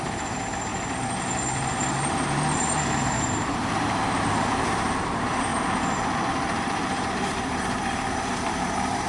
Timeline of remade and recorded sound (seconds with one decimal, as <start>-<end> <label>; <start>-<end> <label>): 0.0-5.5 remade; 5.5-6.3 recorded; 6.3-9.1 remade